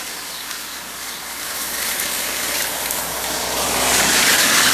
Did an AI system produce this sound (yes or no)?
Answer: yes